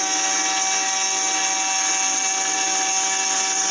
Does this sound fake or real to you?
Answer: real